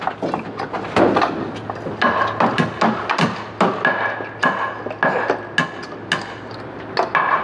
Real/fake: real